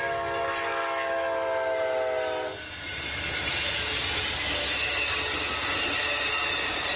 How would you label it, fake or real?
real